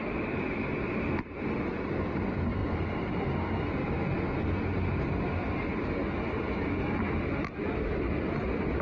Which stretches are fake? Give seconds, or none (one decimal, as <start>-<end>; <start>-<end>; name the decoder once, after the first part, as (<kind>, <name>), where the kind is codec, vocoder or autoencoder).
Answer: none